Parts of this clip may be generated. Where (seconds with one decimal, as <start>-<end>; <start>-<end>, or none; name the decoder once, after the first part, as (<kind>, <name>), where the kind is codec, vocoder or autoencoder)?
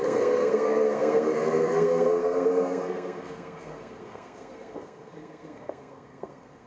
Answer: 0.0-6.7 (codec, SNAC)